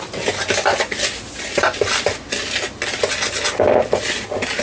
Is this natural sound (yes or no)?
yes